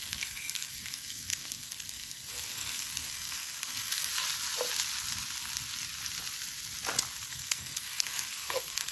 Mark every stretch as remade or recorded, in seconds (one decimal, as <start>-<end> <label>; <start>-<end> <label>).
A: 0.0-4.1 remade; 4.1-7.3 recorded; 7.3-8.9 remade